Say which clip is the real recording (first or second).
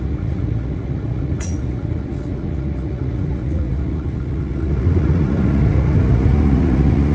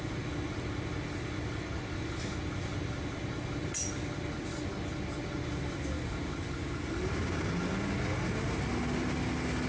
second